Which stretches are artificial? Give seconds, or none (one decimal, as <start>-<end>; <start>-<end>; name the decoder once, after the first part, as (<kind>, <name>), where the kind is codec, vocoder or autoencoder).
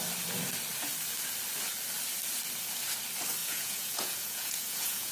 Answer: 3.4-5.1 (vocoder, Vocos)